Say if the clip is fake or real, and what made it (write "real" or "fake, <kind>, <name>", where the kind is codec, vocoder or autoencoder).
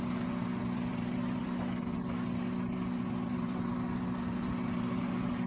real